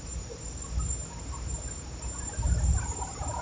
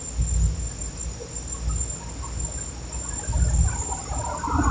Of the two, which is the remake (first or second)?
first